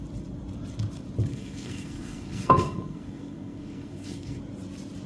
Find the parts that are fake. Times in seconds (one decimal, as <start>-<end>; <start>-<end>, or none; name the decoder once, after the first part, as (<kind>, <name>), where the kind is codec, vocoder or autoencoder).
1.3-4.4 (codec, SNAC)